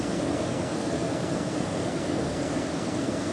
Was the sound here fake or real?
fake